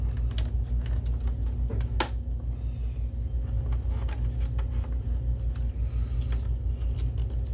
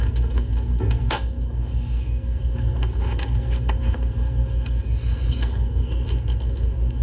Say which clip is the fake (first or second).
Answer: second